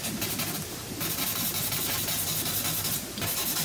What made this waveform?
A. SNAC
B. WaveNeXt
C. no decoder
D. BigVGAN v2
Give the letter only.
C